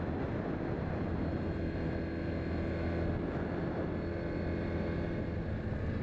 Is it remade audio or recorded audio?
recorded